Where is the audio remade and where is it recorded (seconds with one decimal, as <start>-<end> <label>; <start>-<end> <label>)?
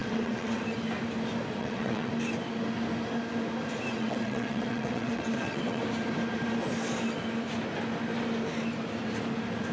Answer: 0.0-0.6 remade; 0.6-1.6 recorded; 1.6-2.1 remade; 2.1-3.9 recorded; 3.9-5.8 remade; 5.8-9.7 recorded